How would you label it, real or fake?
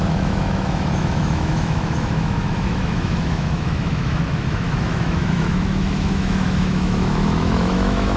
fake